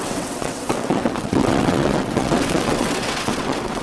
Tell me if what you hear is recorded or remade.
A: remade